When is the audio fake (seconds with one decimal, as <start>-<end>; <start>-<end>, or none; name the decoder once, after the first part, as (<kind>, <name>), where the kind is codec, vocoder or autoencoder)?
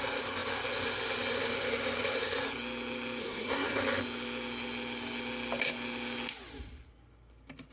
3.2-3.8 (codec, SNAC)